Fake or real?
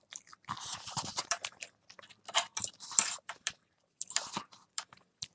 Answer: fake